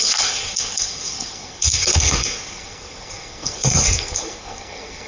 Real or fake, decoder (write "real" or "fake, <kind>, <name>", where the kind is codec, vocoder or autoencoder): fake, codec, SNAC